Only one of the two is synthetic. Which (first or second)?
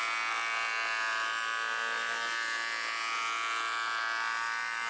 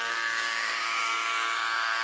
second